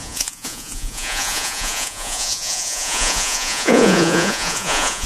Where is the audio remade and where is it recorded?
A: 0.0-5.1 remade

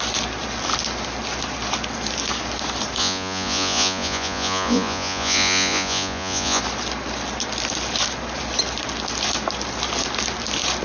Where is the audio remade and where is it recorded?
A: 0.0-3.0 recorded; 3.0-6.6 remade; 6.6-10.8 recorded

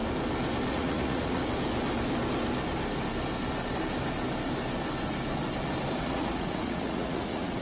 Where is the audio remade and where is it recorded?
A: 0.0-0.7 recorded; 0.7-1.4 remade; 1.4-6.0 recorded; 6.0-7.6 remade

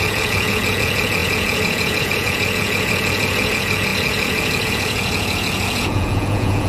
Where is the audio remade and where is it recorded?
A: 0.0-6.7 remade